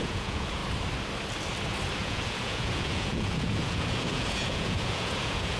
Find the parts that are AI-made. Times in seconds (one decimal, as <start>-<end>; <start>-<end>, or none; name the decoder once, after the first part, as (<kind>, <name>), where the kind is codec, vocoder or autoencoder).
0.0-0.6 (vocoder, Vocos); 2.0-5.6